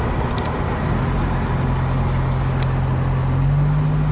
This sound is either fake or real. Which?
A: real